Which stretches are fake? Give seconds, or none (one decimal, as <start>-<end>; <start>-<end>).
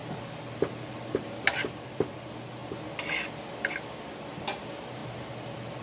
0.0-2.6; 4.6-5.0